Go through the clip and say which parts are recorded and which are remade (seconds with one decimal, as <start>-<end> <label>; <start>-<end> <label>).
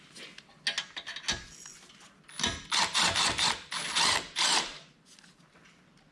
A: 0.0-6.1 recorded